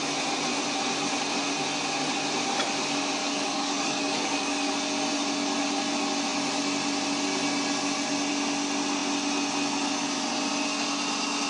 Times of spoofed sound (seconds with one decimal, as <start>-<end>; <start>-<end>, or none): 3.2-4.7